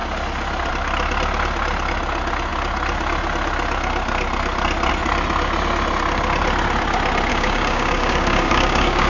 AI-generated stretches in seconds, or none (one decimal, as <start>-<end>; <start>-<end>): 7.3-9.1